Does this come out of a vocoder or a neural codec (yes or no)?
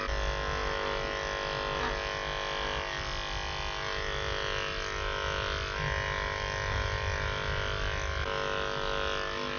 no